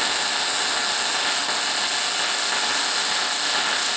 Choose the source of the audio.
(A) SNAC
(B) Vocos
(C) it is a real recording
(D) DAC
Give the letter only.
C